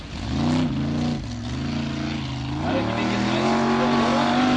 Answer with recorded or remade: recorded